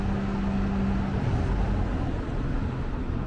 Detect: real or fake real